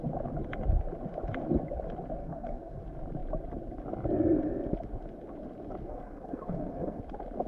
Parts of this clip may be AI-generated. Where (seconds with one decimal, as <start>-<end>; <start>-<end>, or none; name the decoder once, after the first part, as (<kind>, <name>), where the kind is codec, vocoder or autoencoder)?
2.2-2.8 (codec, SNAC); 5.8-7.0